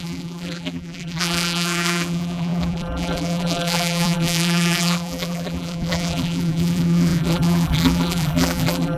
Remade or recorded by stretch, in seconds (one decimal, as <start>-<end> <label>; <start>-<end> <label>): 0.0-9.0 remade